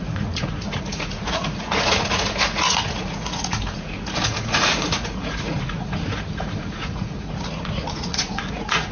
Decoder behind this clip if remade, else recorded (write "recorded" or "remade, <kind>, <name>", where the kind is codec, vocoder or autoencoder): remade, vocoder, Vocos